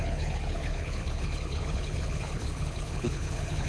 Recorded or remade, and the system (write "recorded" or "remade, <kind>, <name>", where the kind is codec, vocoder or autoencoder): remade, codec, HILCodec